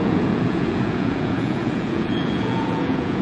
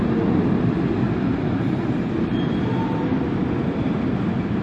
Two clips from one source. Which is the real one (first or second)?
second